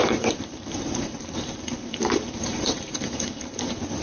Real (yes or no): no